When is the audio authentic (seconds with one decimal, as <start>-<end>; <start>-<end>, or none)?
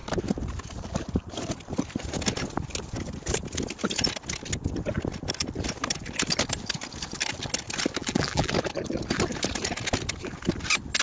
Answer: 0.0-8.0; 8.5-11.0